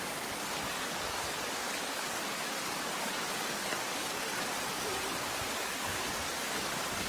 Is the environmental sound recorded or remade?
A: remade